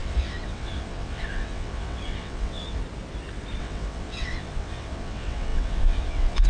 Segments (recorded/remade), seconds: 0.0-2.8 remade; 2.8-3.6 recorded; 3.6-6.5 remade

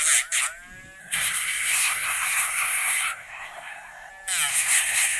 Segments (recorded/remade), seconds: 0.0-1.0 recorded; 1.0-4.1 remade; 4.1-4.5 recorded; 4.5-5.2 remade